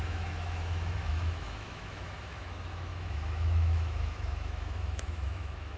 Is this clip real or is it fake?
fake